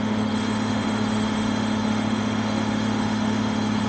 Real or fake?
fake